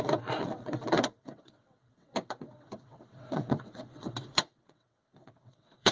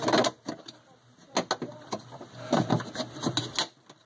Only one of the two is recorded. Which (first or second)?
second